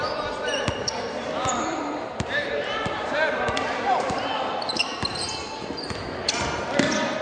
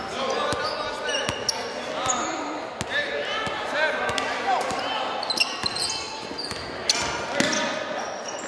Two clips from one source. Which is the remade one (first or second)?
first